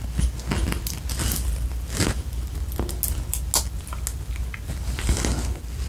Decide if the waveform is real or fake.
real